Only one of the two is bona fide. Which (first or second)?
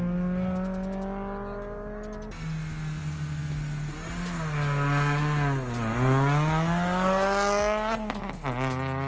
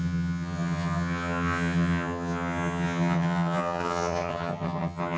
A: first